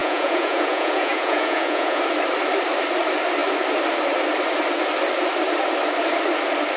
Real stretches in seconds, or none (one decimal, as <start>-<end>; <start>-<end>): 2.0-6.8